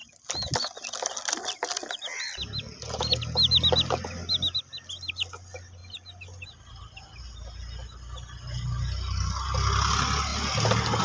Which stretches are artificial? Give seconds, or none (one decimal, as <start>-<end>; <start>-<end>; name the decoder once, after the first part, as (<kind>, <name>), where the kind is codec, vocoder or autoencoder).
none